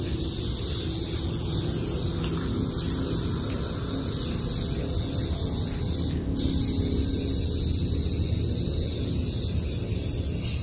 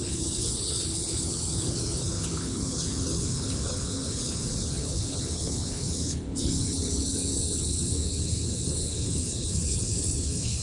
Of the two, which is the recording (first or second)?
first